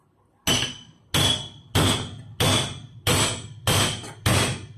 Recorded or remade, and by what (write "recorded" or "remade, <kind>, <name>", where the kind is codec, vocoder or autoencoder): recorded